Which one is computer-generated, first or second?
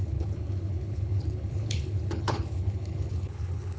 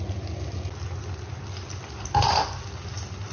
first